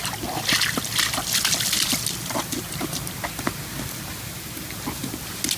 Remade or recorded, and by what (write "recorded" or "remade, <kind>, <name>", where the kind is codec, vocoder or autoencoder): recorded